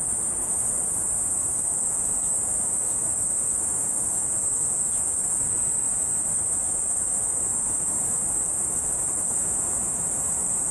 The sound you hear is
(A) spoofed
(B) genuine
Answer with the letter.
A